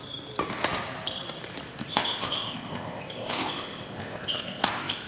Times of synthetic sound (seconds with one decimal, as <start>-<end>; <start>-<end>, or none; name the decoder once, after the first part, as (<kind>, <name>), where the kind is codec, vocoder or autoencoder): 1.8-5.1 (codec, ZipCodec)